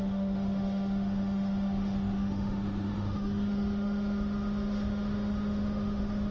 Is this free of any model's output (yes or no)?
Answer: no